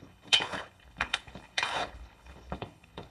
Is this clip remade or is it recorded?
remade